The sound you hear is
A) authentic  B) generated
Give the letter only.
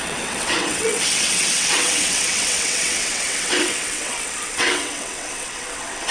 B